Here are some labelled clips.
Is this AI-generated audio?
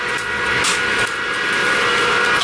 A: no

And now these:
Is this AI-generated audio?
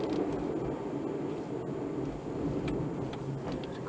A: no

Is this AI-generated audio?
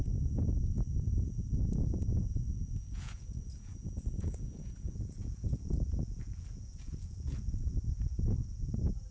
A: yes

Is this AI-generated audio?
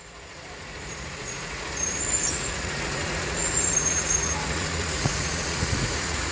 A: yes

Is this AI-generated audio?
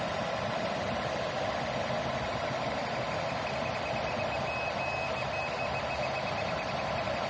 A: no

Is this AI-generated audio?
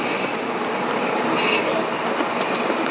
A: no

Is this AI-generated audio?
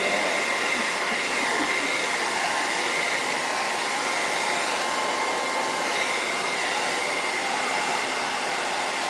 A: no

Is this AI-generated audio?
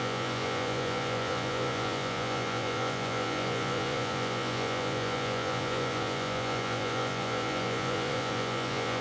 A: yes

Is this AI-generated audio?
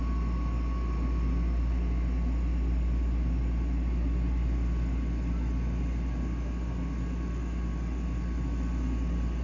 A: no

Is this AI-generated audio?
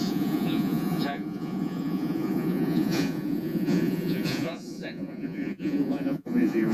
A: yes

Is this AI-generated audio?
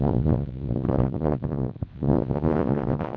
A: yes